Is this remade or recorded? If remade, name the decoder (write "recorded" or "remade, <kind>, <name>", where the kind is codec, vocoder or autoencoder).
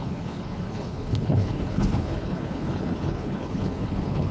remade, codec, HILCodec